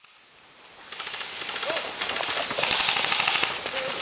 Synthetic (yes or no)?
no